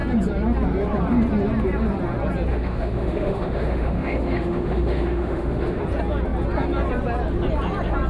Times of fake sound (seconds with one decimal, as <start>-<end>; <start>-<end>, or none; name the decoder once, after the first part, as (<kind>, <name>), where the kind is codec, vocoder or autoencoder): 2.5-5.8 (autoencoder, DAC-VAE)